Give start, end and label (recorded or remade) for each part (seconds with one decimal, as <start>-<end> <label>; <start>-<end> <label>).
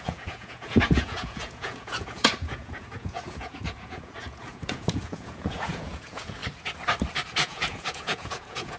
0.0-6.4 remade; 6.4-7.3 recorded; 7.3-8.8 remade